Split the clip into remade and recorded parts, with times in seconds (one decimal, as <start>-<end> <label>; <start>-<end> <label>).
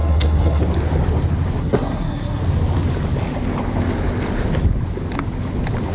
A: 0.0-0.6 remade; 0.6-1.6 recorded; 1.6-2.4 remade; 2.4-5.9 recorded